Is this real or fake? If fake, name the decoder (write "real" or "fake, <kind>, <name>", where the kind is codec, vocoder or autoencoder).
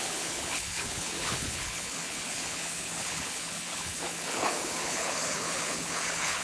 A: fake, codec, HILCodec